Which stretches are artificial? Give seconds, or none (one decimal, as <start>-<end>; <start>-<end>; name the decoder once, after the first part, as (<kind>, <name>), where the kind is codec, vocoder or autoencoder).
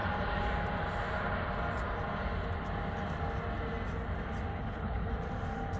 4.5-5.1 (codec, HILCodec)